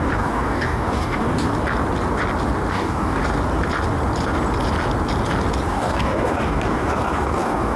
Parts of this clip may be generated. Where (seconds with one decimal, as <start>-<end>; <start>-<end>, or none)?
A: 0.0-1.5; 2.7-3.2; 5.7-7.8